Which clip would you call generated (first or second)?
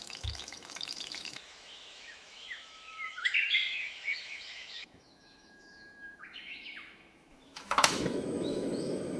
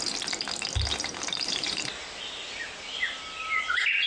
first